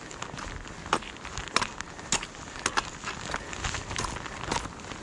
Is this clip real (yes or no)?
yes